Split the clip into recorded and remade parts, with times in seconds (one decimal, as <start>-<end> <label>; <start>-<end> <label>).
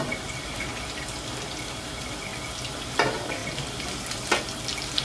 0.0-0.7 remade; 0.7-1.3 recorded; 1.3-2.3 remade; 2.3-2.8 recorded; 2.8-3.4 remade; 3.4-5.0 recorded